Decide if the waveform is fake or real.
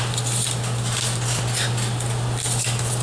real